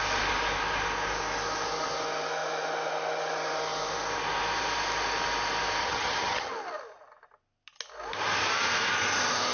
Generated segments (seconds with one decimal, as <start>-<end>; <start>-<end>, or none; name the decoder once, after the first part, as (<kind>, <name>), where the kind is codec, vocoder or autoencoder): 5.8-6.5 (vocoder, HiFi-GAN)